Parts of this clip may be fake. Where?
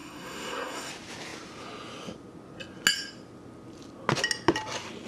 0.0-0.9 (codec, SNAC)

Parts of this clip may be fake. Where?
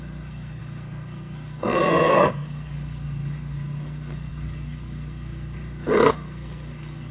0.0-7.1 (codec, SNAC)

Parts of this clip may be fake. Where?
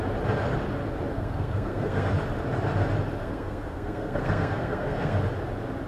1.1-2.1 (codec, SNAC); 3.2-5.2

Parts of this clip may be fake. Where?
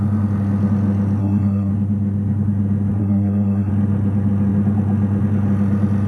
1.2-1.7 (codec, SNAC); 3.0-3.7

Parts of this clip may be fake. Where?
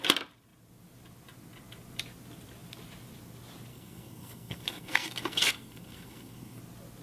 3.7-6.6 (codec, SNAC)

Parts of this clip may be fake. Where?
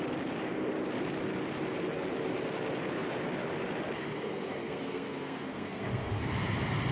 4.2-6.3 (codec, SNAC)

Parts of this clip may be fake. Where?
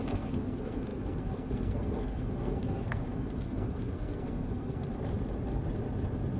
0.0-4.9 (codec, SNAC)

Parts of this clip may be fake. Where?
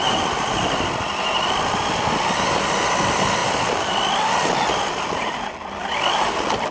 none